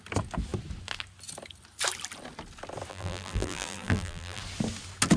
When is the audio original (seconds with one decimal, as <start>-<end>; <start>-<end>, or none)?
0.0-2.9; 4.4-5.2